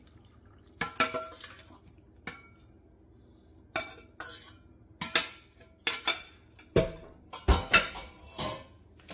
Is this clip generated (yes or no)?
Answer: no